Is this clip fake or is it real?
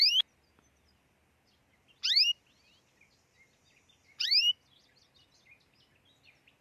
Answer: real